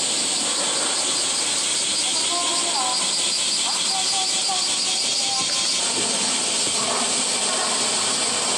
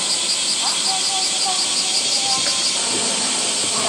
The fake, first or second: second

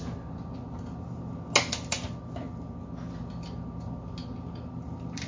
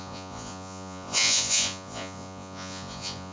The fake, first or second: second